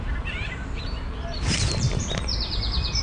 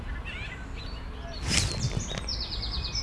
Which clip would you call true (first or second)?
second